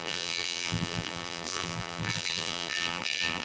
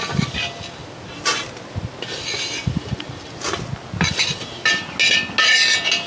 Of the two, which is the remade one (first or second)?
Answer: first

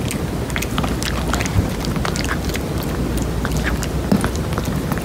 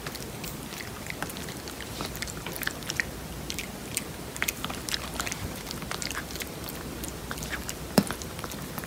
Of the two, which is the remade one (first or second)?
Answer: second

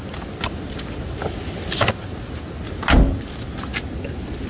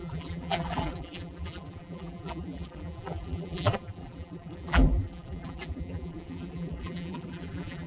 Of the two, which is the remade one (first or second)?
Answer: second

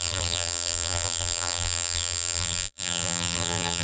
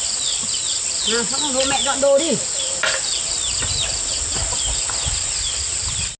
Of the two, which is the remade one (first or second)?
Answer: first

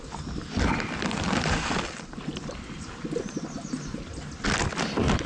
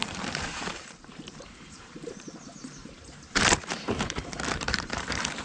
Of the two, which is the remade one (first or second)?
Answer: second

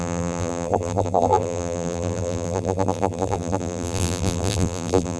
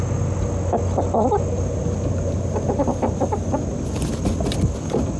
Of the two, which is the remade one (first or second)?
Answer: first